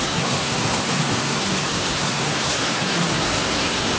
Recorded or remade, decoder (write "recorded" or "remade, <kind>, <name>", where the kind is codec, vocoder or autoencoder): remade, codec, SNAC